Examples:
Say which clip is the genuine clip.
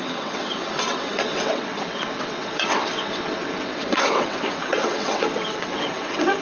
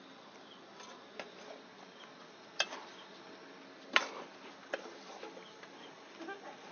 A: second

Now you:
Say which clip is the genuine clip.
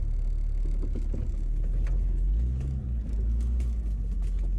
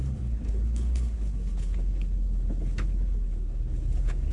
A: first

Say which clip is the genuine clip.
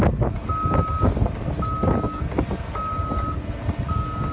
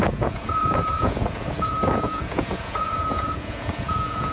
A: first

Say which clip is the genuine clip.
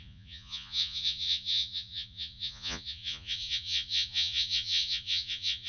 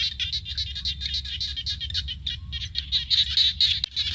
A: second